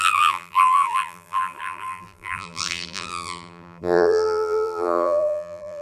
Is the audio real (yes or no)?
no